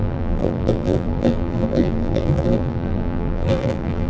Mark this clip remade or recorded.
remade